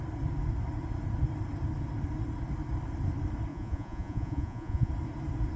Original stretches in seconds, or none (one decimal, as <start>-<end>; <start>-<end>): 0.0-3.5; 4.9-5.6